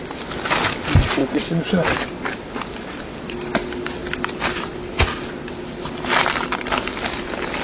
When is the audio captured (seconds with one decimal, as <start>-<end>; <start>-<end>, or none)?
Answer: 0.0-1.2; 2.0-7.6